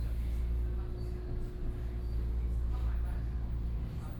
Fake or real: real